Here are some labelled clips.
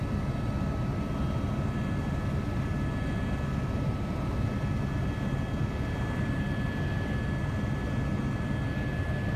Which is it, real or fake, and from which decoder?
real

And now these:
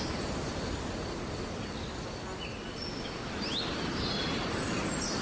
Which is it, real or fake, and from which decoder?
real